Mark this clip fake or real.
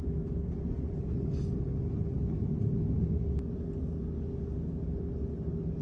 real